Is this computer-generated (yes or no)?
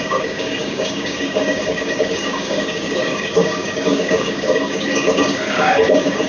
yes